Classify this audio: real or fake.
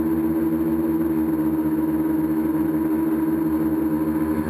real